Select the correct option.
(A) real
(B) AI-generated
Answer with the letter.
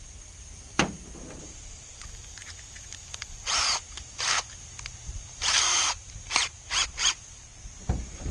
B